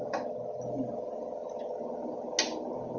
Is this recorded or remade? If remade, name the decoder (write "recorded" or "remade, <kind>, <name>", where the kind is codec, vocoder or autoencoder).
recorded